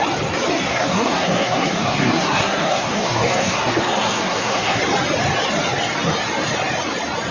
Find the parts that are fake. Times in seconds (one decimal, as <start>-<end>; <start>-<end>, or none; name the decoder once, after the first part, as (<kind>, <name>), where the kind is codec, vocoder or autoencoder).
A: 0.7-4.8 (codec, SNAC)

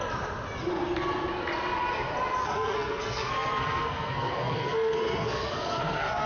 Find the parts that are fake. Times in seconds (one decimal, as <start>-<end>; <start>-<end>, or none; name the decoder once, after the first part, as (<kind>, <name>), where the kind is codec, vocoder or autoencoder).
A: 2.4-6.3 (codec, SNAC)

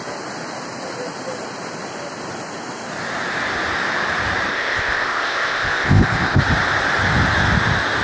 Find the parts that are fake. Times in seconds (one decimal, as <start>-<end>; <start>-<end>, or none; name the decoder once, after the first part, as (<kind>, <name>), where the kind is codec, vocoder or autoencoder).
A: 4.5-6.4 (codec, ZipCodec)

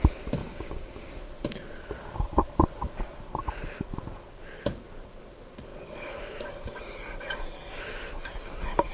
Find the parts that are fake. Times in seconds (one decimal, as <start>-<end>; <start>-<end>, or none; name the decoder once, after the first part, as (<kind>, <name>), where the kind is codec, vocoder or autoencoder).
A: 0.4-1.1 (codec, DAC)